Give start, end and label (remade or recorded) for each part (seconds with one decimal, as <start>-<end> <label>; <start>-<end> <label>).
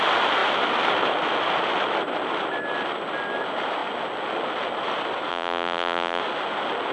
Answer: 0.0-5.3 recorded; 5.3-6.2 remade; 6.2-6.9 recorded